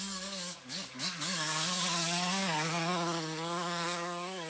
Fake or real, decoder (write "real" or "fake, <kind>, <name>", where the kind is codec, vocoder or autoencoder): fake, codec, DAC